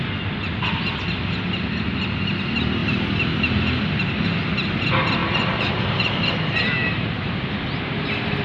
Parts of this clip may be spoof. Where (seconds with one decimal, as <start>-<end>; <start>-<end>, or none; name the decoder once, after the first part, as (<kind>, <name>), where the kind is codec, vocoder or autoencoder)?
5.2-6.2 (vocoder, BigVGAN v2); 6.8-8.0